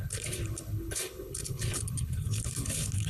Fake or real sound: fake